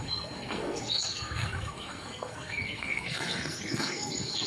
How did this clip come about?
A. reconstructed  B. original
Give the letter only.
A